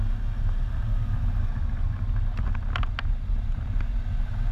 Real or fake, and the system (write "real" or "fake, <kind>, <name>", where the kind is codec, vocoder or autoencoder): real